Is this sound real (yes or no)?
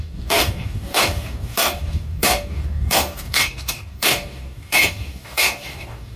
no